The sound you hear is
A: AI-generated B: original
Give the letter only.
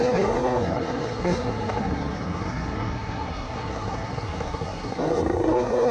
A